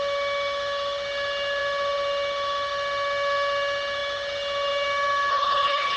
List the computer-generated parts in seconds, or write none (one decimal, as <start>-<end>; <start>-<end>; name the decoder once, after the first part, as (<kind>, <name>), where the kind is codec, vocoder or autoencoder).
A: 5.3-6.0 (codec, HILCodec)